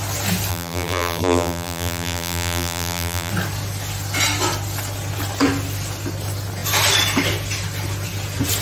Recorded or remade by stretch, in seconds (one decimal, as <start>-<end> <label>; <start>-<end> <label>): 0.0-0.5 recorded; 0.5-3.3 remade; 3.3-8.6 recorded